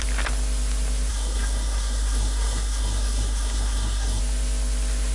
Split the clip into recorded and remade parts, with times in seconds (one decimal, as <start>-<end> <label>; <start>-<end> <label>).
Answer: 0.0-1.1 recorded; 1.1-4.2 remade; 4.2-5.1 recorded